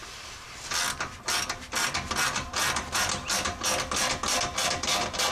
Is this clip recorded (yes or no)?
yes